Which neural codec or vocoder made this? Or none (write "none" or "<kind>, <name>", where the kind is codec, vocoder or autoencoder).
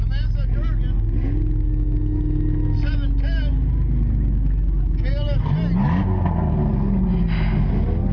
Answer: none